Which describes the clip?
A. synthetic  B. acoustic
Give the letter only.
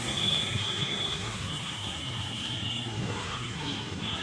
A